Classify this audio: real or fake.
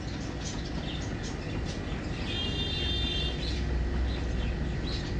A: real